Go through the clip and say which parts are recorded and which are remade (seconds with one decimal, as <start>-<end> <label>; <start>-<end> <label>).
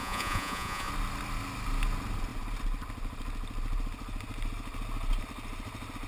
0.0-0.9 remade; 0.9-6.1 recorded